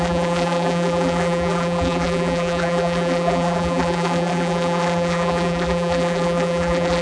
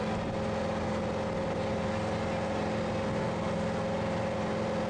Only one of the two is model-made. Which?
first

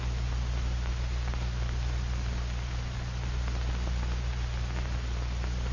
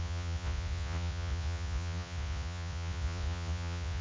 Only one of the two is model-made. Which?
second